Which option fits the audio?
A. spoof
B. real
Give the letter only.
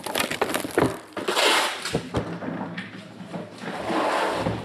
B